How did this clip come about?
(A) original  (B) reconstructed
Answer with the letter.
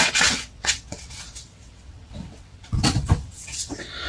B